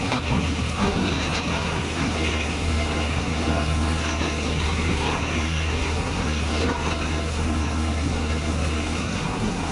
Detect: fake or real fake